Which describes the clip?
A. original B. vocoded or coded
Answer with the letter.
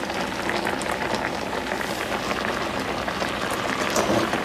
A